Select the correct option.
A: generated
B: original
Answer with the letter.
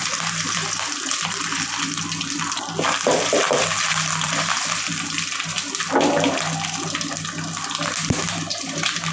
A